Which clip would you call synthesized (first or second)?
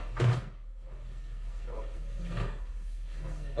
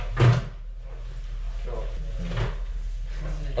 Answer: first